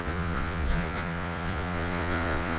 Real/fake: fake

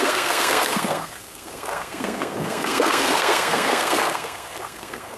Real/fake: fake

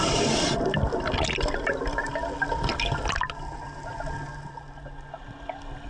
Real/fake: real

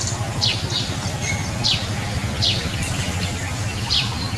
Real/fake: real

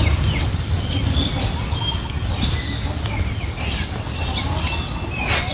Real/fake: real